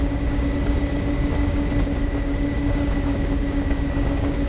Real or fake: fake